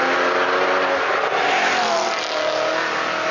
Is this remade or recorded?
recorded